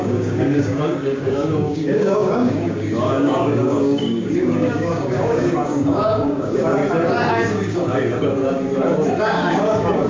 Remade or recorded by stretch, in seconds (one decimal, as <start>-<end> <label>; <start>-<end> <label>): 0.0-6.8 remade; 6.8-7.3 recorded; 7.3-8.4 remade; 8.4-9.2 recorded; 9.2-10.1 remade